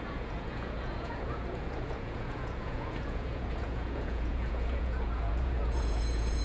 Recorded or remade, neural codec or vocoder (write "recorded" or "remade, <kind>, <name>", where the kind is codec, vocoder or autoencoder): remade, vocoder, Vocos